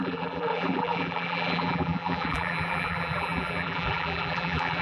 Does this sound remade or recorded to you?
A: remade